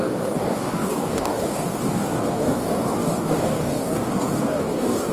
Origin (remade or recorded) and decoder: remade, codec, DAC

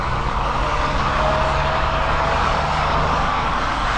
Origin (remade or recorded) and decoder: remade, codec, DAC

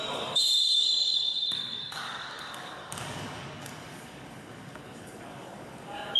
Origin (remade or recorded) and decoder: remade, codec, DAC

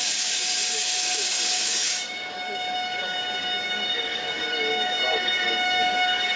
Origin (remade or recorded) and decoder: remade, codec, DAC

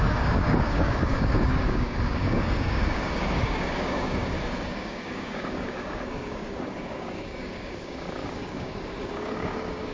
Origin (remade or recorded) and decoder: remade, codec, DAC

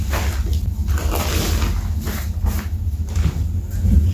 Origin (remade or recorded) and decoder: recorded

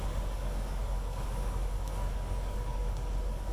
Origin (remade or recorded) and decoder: remade, codec, DAC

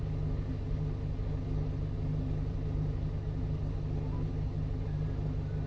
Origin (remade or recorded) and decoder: recorded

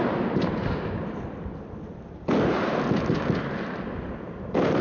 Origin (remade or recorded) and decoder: recorded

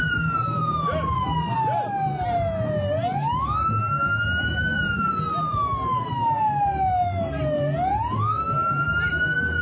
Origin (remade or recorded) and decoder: recorded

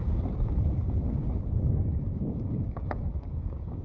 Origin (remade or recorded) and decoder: remade, codec, DAC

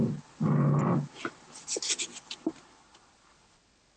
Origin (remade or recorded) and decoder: recorded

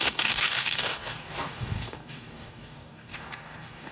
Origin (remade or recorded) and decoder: remade, codec, DAC